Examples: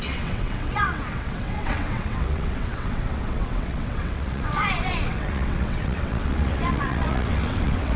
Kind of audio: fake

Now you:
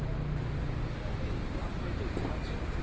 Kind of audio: real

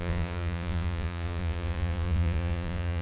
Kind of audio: fake